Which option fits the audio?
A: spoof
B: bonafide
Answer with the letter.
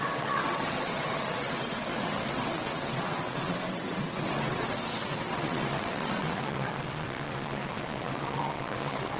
A